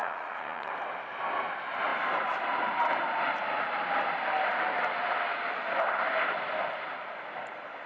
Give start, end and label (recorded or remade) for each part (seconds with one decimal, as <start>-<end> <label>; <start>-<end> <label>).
0.0-0.7 remade; 0.7-7.9 recorded